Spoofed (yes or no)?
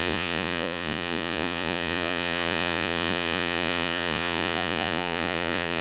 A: yes